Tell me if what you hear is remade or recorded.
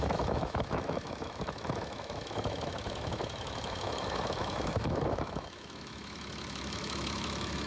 remade